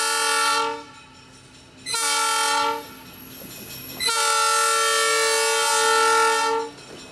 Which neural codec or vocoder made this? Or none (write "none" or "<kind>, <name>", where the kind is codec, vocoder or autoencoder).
none